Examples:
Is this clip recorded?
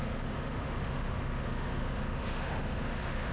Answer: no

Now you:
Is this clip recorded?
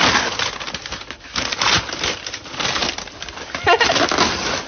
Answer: yes